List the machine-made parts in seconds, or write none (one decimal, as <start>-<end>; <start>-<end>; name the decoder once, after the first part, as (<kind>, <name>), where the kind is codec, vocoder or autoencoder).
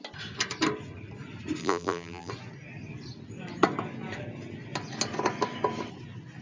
1.6-2.3 (vocoder, BigVGAN v2)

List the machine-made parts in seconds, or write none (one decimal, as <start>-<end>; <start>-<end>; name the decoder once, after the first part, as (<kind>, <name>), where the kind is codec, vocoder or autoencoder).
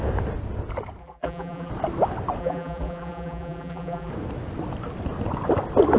1.0-1.7 (vocoder, BigVGAN v2); 2.4-4.1